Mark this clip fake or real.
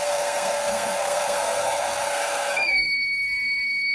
fake